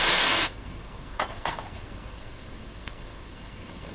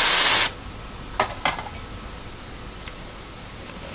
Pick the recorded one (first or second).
second